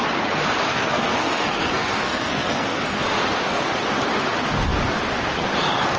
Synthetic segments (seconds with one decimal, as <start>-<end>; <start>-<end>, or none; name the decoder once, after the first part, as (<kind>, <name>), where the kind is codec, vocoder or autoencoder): 0.7-3.0 (codec, SNAC)